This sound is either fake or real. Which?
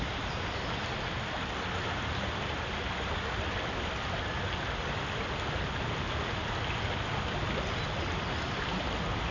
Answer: real